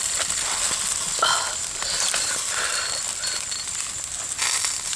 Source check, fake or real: real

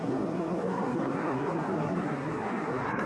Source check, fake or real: fake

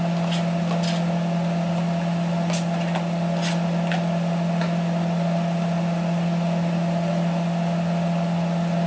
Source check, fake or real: real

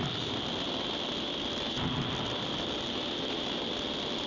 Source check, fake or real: real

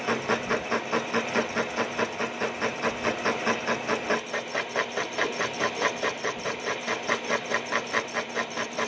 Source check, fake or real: real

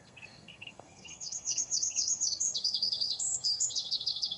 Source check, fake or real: fake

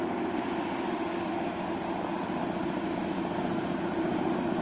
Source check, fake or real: real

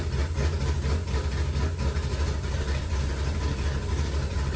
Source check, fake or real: real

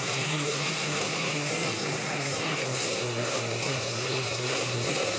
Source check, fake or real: fake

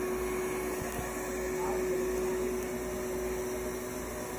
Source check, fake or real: real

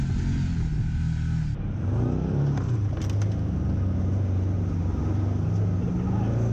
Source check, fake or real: real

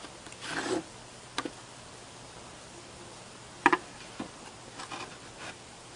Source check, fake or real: real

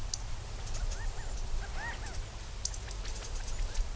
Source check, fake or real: real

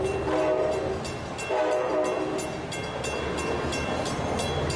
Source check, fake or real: real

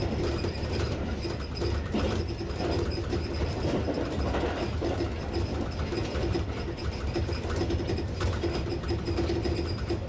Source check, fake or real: real